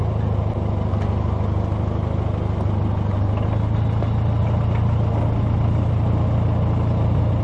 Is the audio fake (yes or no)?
no